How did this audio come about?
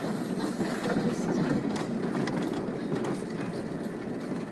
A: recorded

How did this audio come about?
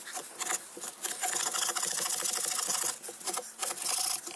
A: recorded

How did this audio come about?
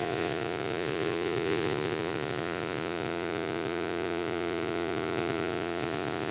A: remade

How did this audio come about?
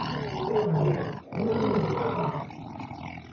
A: recorded